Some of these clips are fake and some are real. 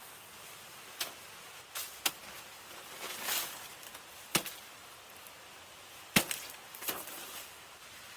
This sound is real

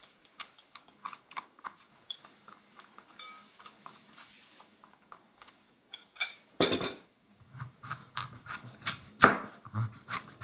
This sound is fake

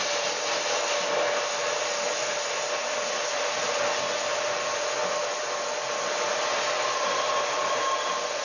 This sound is real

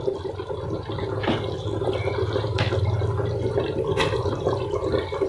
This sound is real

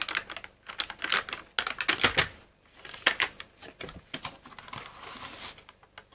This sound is real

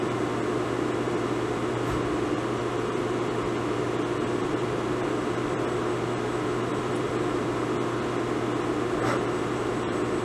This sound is real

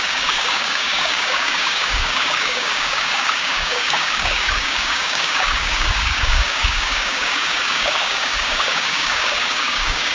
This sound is fake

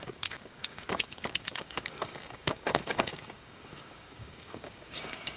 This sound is fake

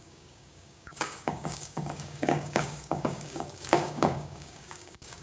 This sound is fake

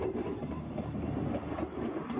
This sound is real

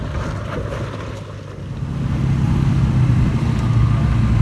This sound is real